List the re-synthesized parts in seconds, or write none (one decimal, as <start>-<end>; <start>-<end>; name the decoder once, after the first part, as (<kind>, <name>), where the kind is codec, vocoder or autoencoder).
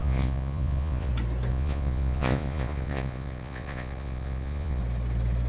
0.0-1.1 (vocoder, Vocos); 1.5-4.8